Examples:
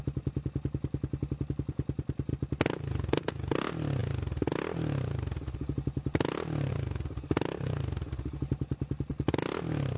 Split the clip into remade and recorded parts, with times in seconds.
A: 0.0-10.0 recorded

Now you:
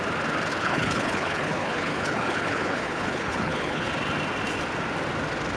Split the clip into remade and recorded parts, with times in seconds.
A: 0.0-0.5 recorded; 0.5-3.9 remade; 3.9-5.6 recorded

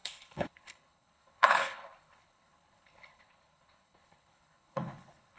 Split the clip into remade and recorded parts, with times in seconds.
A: 0.0-5.4 remade

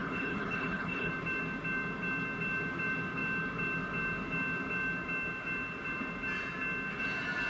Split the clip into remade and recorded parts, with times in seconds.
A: 0.0-1.1 remade; 1.1-7.5 recorded